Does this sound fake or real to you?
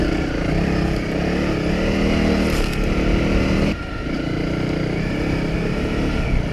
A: real